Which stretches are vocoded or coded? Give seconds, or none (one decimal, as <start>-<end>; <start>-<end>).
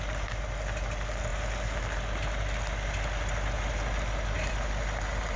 none